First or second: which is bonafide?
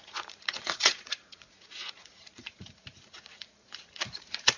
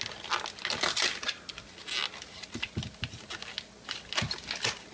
second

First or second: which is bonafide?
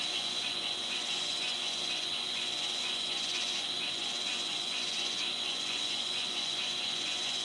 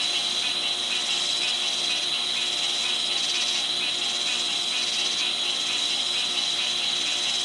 second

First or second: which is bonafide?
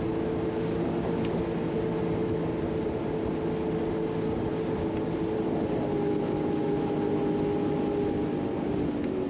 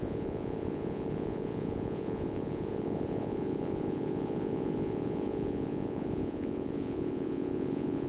first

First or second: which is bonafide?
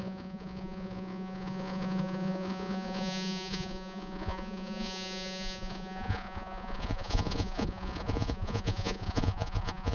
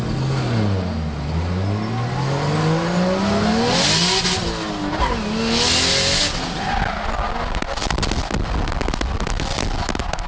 second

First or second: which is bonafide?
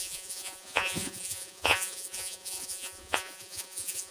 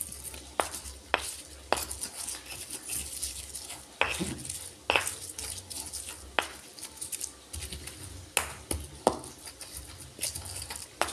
second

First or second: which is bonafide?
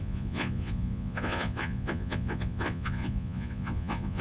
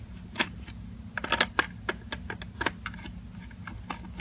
second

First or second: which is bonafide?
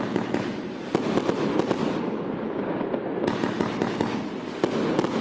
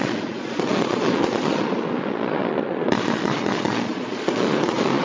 first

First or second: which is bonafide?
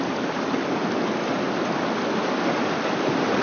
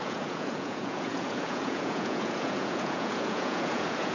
first